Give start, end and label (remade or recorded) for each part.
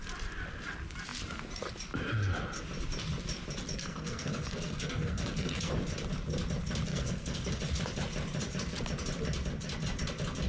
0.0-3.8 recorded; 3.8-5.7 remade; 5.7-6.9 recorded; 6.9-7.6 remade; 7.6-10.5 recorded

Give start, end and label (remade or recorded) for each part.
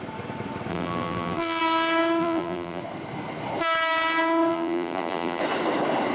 0.0-0.7 recorded; 0.7-1.6 remade; 1.6-2.2 recorded; 2.2-2.8 remade; 2.8-4.5 recorded; 4.5-5.4 remade; 5.4-6.1 recorded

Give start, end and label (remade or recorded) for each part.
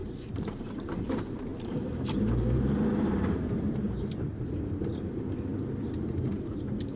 0.0-7.0 remade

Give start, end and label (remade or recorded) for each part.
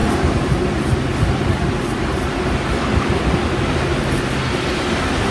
0.0-5.3 recorded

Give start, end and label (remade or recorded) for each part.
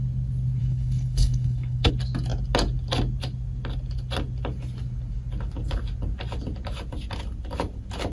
0.0-0.6 recorded; 0.6-1.9 remade; 1.9-8.1 recorded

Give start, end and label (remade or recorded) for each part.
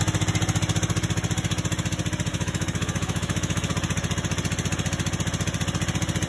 0.0-2.3 recorded; 2.3-3.7 remade; 3.7-6.3 recorded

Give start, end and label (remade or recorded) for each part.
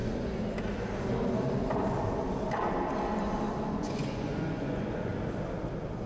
0.0-3.7 recorded; 3.7-5.1 remade; 5.1-6.1 recorded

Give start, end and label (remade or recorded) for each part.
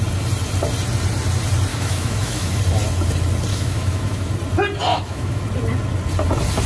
0.0-1.7 recorded; 1.7-2.6 remade; 2.6-3.5 recorded; 3.5-4.3 remade; 4.3-4.9 recorded; 4.9-5.4 remade; 5.4-6.7 recorded